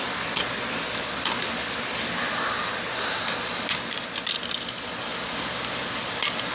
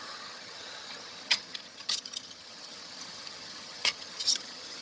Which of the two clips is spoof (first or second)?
second